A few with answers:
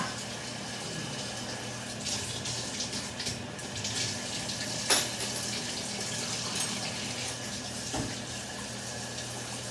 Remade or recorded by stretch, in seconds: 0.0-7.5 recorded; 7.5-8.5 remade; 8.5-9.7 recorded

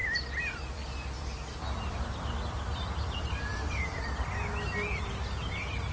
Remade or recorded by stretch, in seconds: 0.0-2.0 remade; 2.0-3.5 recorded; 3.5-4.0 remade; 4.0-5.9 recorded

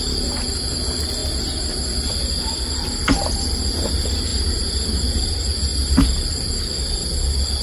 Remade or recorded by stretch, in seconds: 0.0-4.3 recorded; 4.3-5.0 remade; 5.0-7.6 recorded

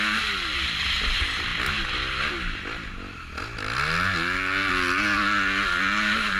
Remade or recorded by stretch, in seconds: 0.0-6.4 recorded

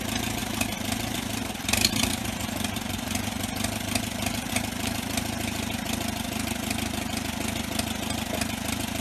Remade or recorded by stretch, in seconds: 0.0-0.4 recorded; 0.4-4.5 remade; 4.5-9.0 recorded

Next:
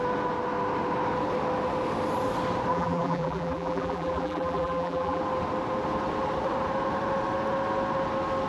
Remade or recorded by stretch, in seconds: 0.0-2.7 recorded; 2.7-5.2 remade; 5.2-8.5 recorded